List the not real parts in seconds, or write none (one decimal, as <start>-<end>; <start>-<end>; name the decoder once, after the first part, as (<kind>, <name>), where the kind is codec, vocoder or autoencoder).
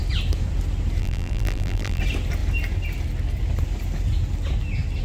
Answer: 1.0-2.0 (vocoder, BigVGAN v2)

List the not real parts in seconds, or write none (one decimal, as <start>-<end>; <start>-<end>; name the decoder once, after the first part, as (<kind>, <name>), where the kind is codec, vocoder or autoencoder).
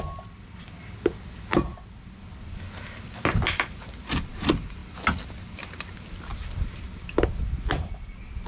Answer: 1.7-4.3 (vocoder, BigVGAN v2); 6.3-8.1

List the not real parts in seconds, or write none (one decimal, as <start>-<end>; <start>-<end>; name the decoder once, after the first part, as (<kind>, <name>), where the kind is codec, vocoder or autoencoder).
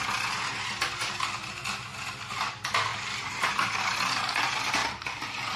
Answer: 1.9-2.5 (vocoder, BigVGAN v2); 2.9-3.5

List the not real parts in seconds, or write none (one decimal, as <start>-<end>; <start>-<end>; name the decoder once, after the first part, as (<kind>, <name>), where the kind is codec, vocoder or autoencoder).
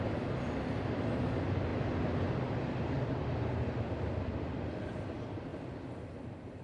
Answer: none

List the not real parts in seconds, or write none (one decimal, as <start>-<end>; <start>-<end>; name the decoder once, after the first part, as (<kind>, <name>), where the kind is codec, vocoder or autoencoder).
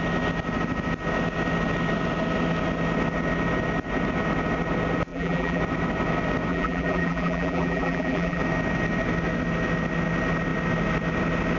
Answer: 5.1-5.6 (vocoder, BigVGAN v2); 6.5-8.4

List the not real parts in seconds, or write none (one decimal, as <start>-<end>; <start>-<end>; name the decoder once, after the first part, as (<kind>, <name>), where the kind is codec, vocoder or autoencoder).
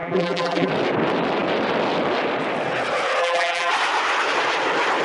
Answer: 0.0-0.7 (vocoder, BigVGAN v2); 3.2-3.7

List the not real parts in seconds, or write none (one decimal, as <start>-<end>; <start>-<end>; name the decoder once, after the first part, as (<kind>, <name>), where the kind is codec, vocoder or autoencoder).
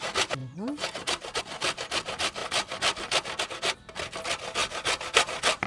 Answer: 0.4-1.4 (vocoder, BigVGAN v2)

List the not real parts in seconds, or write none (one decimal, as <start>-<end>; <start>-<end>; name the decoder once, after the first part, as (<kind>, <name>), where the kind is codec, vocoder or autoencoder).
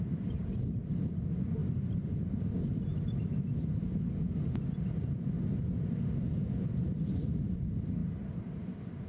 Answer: 0.0-1.6 (vocoder, BigVGAN v2); 6.7-8.0; 8.6-9.1